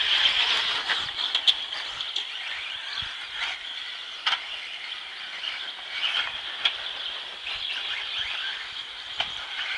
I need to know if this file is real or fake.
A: real